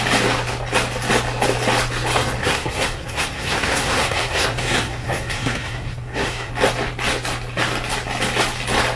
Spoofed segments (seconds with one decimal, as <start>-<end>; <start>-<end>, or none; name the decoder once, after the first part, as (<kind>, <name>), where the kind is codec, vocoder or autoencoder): 2.4-6.5 (codec, SNAC)